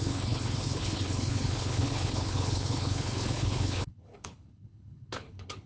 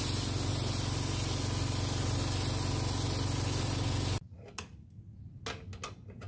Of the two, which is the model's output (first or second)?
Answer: first